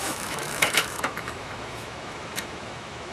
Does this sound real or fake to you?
fake